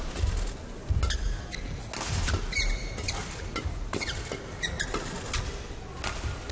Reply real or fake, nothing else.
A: real